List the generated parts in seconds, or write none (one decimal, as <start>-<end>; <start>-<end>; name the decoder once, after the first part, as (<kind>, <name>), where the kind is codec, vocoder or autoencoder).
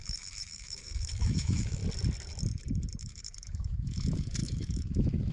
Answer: 0.0-1.8 (autoencoder, DAC-VAE); 3.0-5.3